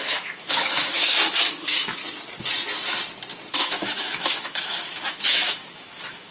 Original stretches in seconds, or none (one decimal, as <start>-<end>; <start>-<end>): 2.0-3.5